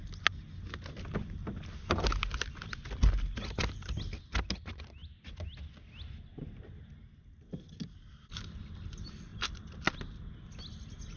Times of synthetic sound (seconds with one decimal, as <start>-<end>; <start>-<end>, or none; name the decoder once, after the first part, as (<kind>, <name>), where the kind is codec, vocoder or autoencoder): none